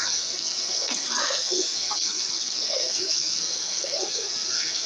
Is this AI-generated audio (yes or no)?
yes